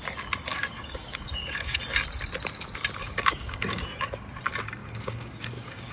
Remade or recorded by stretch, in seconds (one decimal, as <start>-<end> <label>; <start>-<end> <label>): 0.0-0.5 recorded; 0.5-1.8 remade; 1.8-3.0 recorded; 3.0-3.8 remade; 3.8-4.8 recorded; 4.8-5.9 remade